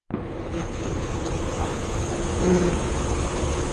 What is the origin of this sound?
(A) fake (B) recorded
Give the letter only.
A